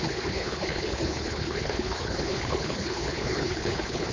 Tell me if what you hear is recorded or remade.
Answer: remade